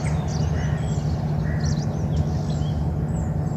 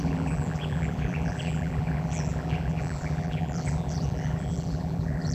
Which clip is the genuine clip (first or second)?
first